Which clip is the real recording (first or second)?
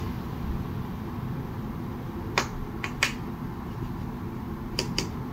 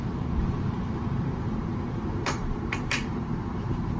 first